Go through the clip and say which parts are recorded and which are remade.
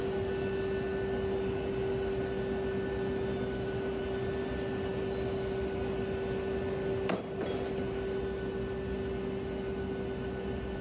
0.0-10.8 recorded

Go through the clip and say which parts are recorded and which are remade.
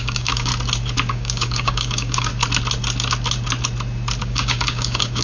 0.0-0.5 remade; 0.5-1.1 recorded; 1.1-2.3 remade; 2.3-4.2 recorded; 4.2-5.2 remade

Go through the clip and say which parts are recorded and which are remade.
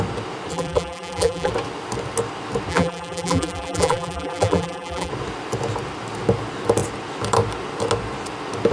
0.0-0.5 recorded; 0.5-1.5 remade; 1.5-2.7 recorded; 2.7-5.1 remade; 5.1-8.7 recorded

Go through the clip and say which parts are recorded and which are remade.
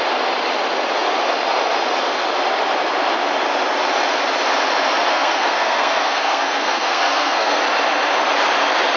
0.0-5.1 recorded; 5.1-7.6 remade; 7.6-9.0 recorded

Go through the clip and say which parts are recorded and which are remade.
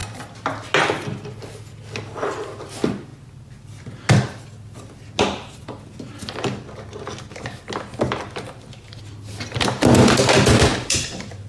0.0-10.7 recorded; 10.7-11.5 remade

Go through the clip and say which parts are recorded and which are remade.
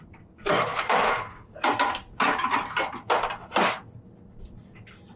0.0-5.2 recorded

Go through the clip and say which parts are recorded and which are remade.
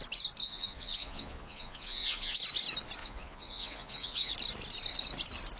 0.0-0.4 recorded; 0.4-2.4 remade; 2.4-3.0 recorded; 3.0-4.3 remade; 4.3-5.6 recorded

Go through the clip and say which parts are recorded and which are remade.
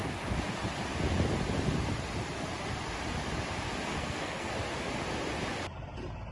0.0-3.9 recorded; 3.9-4.5 remade; 4.5-6.3 recorded